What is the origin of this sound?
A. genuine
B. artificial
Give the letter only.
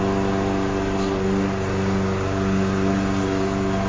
A